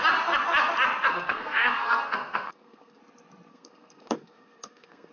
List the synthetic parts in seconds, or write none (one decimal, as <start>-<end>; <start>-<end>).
1.1-3.0; 3.5-5.1